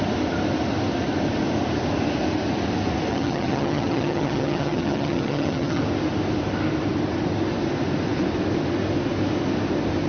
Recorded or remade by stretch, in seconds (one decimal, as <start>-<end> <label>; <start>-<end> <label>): 0.0-3.1 recorded; 3.1-5.8 remade; 5.8-10.1 recorded